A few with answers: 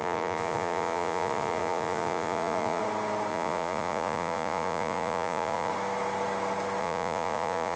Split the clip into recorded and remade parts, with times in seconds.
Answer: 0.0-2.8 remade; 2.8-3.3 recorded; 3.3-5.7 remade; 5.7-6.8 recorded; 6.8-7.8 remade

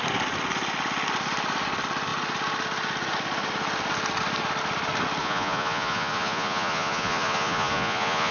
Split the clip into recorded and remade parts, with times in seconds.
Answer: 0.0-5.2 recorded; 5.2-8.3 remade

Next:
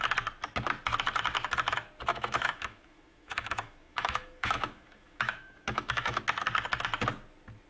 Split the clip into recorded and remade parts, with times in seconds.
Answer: 0.0-2.1 recorded; 2.1-6.2 remade; 6.2-7.7 recorded

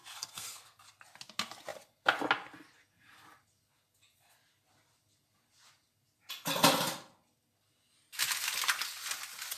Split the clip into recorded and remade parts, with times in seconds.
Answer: 0.0-0.8 remade; 0.8-9.6 recorded

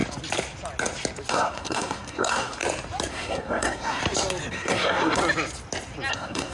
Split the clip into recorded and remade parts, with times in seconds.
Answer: 0.0-1.3 recorded; 1.3-2.6 remade; 2.6-3.1 recorded; 3.1-4.0 remade; 4.0-4.5 recorded; 4.5-5.2 remade; 5.2-6.1 recorded; 6.1-6.5 remade